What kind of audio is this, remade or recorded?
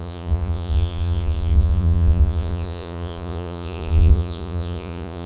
remade